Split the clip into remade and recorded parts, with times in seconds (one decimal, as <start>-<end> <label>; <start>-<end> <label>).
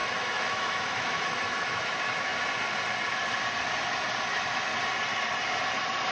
0.0-2.3 remade; 2.3-4.3 recorded; 4.3-4.7 remade; 4.7-6.1 recorded